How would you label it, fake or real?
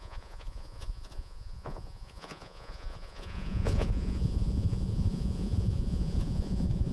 fake